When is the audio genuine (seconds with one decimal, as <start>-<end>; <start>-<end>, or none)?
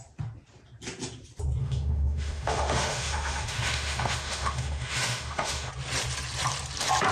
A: 0.0-1.6; 5.7-7.1